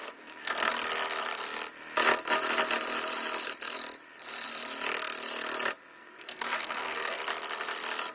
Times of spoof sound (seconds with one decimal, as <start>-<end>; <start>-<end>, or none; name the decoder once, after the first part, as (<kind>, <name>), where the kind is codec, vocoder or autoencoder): 0.0-0.7 (codec, SNAC); 6.0-7.2